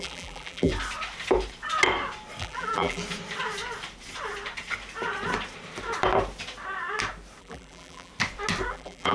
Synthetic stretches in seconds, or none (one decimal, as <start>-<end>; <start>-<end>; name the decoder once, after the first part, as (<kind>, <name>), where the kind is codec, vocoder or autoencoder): 0.0-0.7 (vocoder, BigVGAN v2); 2.4-3.0; 7.4-8.1; 8.7-9.1